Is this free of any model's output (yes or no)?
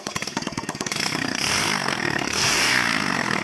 no